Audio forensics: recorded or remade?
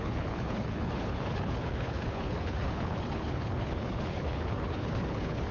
remade